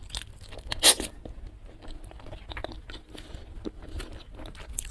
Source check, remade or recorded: recorded